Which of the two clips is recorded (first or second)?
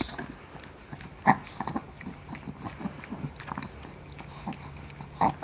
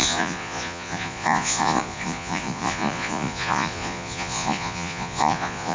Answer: first